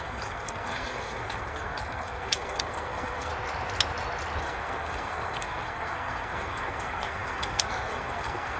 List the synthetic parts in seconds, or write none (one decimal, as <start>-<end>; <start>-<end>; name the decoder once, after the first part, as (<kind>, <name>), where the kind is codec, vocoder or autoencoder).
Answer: 0.0-3.3 (codec, SNAC); 4.4-8.6